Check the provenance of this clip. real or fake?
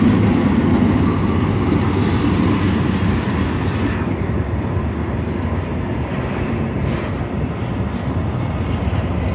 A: real